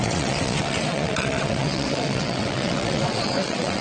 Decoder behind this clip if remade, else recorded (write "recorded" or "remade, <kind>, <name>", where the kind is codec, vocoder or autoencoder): remade, vocoder, WaveNeXt